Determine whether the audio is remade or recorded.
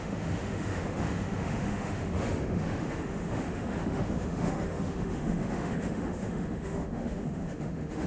remade